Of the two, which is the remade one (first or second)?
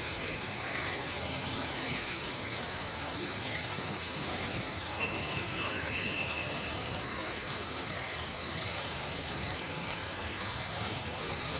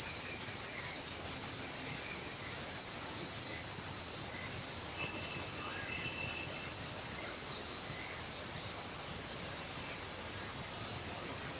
first